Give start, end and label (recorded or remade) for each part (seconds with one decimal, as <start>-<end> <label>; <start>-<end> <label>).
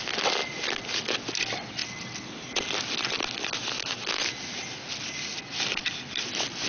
0.0-6.7 recorded